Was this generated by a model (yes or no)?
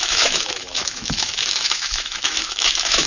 yes